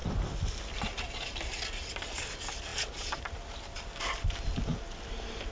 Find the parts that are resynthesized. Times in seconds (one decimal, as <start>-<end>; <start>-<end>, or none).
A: 1.9-4.7